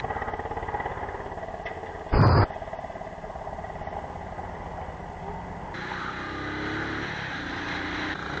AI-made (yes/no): no